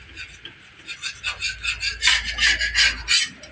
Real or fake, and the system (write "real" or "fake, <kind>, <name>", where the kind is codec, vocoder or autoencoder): real